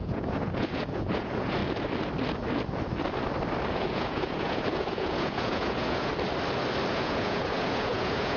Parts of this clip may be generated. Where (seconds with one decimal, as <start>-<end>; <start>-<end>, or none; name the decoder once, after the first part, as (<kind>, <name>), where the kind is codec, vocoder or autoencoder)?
0.0-1.6 (vocoder, Vocos); 3.7-6.1; 6.9-8.4